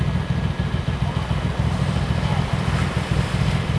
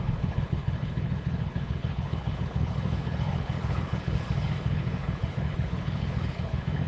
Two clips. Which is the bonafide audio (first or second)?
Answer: first